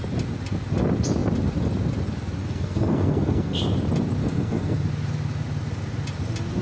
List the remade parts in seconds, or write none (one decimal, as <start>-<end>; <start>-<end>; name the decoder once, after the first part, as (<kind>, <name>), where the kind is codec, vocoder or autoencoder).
2.4-3.6 (codec, SNAC); 4.2-4.9